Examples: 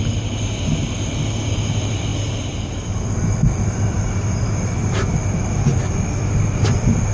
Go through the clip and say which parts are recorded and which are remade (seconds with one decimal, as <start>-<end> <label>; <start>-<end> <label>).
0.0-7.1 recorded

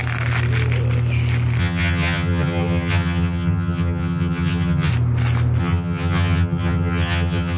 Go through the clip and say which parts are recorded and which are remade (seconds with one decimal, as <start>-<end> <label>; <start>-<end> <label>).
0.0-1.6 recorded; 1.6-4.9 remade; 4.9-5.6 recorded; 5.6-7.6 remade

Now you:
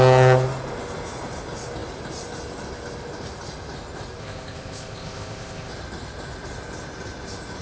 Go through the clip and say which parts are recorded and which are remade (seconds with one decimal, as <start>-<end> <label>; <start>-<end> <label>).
0.0-4.2 recorded; 4.2-5.7 remade; 5.7-7.6 recorded

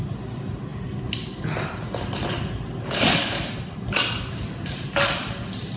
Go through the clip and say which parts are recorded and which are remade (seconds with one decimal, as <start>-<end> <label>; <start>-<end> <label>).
0.0-5.8 recorded

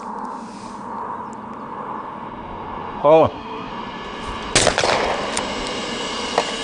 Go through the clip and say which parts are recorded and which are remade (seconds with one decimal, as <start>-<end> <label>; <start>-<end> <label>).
0.0-3.0 recorded; 3.0-3.7 remade; 3.7-6.6 recorded

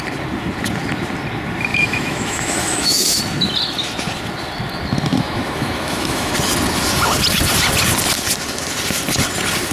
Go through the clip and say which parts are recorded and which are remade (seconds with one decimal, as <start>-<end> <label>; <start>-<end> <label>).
0.0-1.7 recorded; 1.7-3.2 remade; 3.2-5.1 recorded; 5.1-6.3 remade; 6.3-9.7 recorded

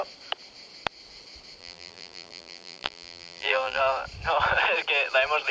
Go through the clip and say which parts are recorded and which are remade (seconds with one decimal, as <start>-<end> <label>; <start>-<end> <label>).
0.0-1.6 recorded; 1.6-3.8 remade; 3.8-5.5 recorded